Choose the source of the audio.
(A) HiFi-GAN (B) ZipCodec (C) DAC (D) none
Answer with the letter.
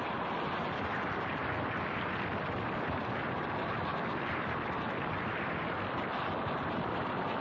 D